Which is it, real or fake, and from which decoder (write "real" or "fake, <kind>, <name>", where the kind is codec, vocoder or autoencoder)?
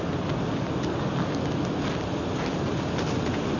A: real